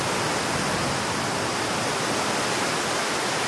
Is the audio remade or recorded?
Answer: recorded